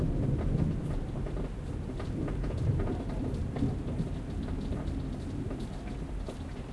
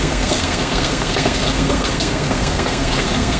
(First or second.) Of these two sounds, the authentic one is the first